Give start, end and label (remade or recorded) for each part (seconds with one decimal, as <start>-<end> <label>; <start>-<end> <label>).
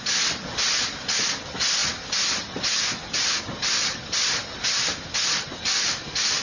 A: 0.0-6.4 recorded